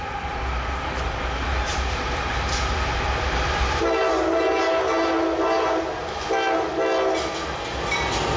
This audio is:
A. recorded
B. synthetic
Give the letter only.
A